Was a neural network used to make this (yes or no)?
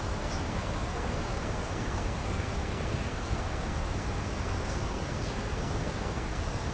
yes